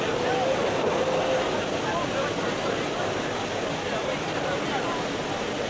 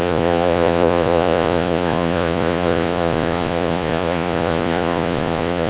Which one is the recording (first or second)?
first